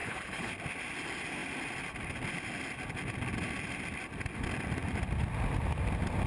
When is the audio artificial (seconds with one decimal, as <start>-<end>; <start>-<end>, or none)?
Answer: 0.0-0.5